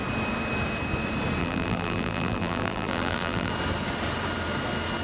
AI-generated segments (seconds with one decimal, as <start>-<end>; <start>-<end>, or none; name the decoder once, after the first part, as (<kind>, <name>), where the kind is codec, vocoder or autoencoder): 1.4-3.5 (vocoder, BigVGAN v2)